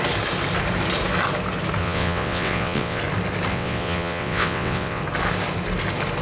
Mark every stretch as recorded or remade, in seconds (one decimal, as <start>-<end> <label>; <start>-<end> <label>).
0.0-1.8 recorded; 1.8-3.0 remade; 3.0-3.5 recorded; 3.5-5.0 remade; 5.0-6.2 recorded

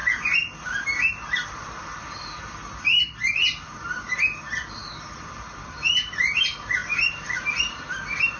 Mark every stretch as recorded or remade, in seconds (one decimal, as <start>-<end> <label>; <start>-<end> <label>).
0.0-8.4 remade